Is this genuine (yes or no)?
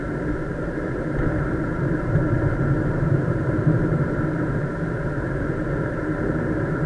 no